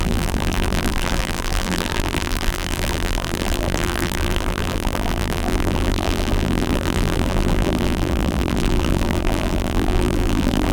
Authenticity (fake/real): fake